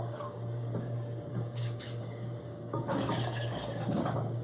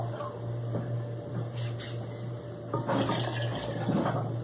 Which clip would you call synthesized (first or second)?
first